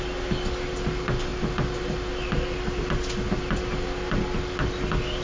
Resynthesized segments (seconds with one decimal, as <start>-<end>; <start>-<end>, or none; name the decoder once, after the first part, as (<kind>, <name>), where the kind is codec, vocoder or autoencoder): none